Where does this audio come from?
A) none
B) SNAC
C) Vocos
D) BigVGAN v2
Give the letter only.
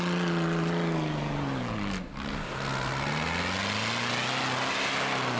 A